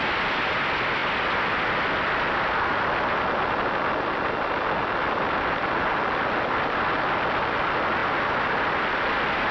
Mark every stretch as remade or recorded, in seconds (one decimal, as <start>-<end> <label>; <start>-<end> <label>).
0.0-9.5 recorded